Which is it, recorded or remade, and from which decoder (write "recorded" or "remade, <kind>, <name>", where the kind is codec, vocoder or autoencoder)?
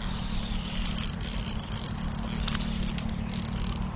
recorded